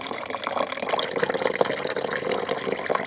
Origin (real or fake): real